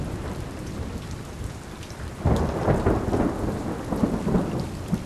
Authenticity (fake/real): real